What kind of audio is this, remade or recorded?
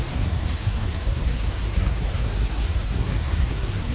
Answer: remade